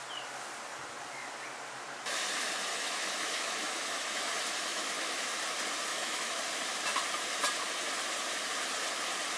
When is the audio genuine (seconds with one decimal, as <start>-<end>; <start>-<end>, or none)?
0.0-2.7; 4.2-4.7; 5.3-5.9; 6.4-9.4